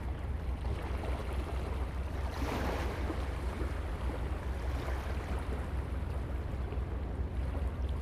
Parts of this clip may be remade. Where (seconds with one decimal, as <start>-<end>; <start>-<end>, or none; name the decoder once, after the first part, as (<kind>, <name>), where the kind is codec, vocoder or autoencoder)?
none